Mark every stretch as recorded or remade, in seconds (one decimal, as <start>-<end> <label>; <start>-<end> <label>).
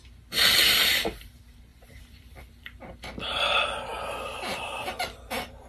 0.0-1.7 recorded; 1.7-3.4 remade; 3.4-5.7 recorded